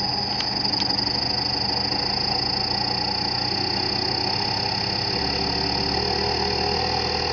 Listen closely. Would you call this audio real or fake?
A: real